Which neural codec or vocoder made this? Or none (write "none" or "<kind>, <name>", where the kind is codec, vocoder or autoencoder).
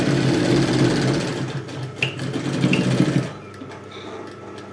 none